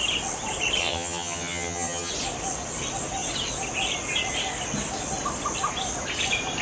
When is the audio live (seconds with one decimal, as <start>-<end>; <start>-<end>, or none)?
0.0-0.8; 2.1-6.6